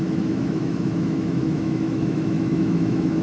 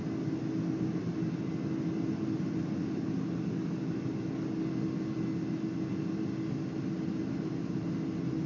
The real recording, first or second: second